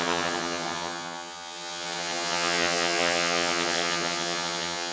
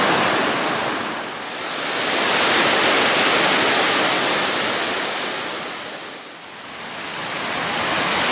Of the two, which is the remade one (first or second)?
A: first